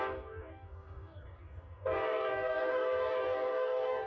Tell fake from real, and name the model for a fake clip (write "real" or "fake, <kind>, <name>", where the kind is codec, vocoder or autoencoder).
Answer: fake, codec, DAC